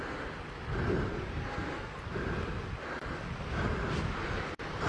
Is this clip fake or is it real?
real